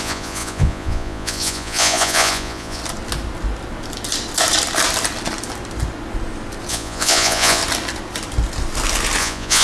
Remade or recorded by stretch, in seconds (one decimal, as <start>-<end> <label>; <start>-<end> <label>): 0.0-2.8 remade; 2.8-6.7 recorded; 6.7-7.6 remade; 7.6-9.2 recorded; 9.2-9.6 remade